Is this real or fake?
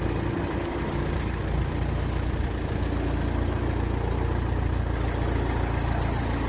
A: real